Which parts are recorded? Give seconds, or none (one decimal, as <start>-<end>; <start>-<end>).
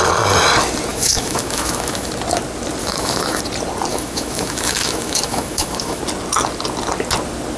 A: 0.0-0.9; 2.1-2.8; 3.4-3.9; 6.0-7.6